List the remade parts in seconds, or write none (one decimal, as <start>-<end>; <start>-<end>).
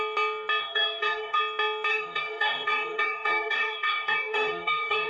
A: 0.6-1.4; 1.9-5.1